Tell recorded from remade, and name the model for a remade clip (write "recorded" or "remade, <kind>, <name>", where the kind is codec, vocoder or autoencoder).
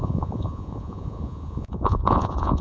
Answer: remade, vocoder, Vocos